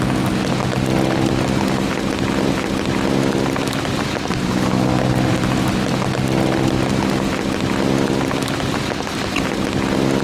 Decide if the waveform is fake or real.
real